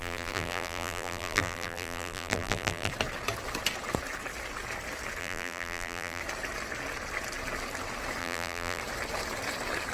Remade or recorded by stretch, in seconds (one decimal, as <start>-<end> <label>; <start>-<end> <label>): 0.0-2.9 remade; 2.9-5.2 recorded; 5.2-6.2 remade; 6.2-8.2 recorded; 8.2-8.8 remade; 8.8-9.9 recorded